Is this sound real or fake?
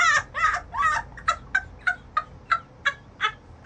real